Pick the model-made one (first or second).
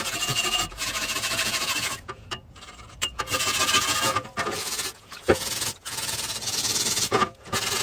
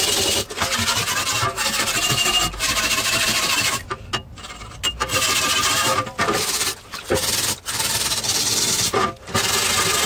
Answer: first